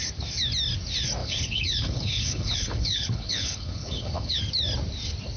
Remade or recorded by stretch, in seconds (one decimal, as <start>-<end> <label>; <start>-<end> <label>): 0.0-1.2 recorded; 1.2-4.4 remade; 4.4-5.4 recorded